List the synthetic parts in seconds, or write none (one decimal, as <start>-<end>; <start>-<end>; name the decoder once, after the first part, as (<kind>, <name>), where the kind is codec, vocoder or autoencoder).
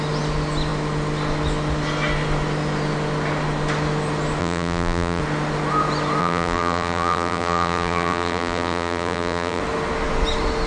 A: 4.4-5.2 (vocoder, BigVGAN v2); 6.2-9.6